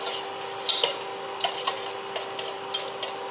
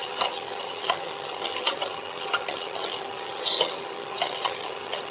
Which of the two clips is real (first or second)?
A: first